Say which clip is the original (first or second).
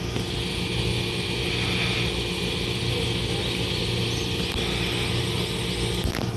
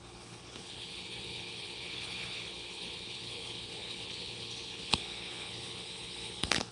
first